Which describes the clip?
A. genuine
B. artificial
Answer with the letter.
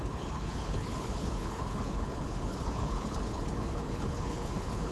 B